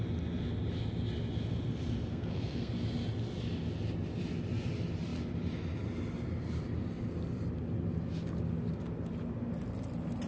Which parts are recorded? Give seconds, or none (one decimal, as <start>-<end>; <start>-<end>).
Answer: 0.0-2.1; 2.7-10.3